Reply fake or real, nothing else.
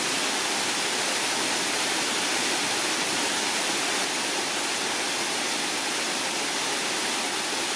real